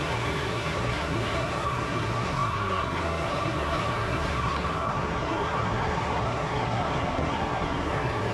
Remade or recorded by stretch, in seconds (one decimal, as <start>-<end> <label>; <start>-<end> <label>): 0.0-8.3 remade